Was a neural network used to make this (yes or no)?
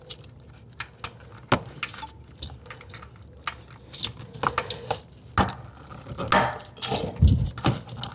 no